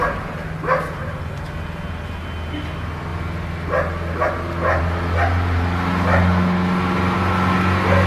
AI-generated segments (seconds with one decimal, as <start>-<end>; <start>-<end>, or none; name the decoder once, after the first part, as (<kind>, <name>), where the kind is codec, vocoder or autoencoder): none